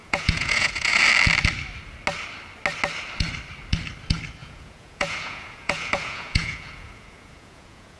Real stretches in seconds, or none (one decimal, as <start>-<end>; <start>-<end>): 1.0-4.4